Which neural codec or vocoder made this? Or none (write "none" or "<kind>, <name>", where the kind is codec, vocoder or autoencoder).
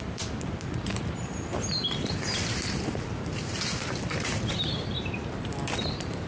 vocoder, BigVGAN v2